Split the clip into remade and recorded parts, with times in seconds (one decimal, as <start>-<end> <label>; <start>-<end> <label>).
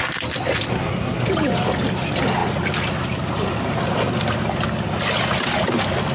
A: 0.0-0.7 recorded; 0.7-1.3 remade; 1.3-6.1 recorded